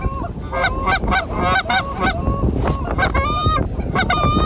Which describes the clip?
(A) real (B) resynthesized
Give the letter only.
A